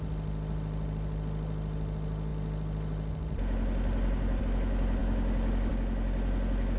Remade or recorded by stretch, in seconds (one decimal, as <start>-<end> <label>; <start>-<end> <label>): 0.0-6.8 recorded